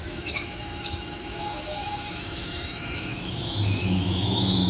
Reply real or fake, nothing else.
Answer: fake